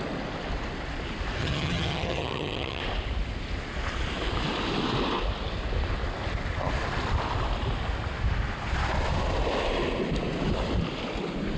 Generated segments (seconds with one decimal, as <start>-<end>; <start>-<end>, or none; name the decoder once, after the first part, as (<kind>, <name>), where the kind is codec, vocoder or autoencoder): 1.4-2.8 (vocoder, HiFi-GAN)